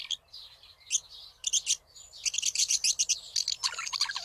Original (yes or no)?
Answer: yes